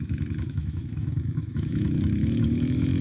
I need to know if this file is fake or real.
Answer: fake